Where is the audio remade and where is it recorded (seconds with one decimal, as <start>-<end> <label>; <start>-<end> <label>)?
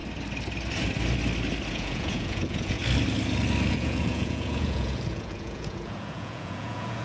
0.0-1.7 recorded; 1.7-2.8 remade; 2.8-3.7 recorded; 3.7-7.0 remade